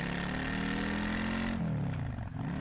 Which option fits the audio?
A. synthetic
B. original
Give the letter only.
B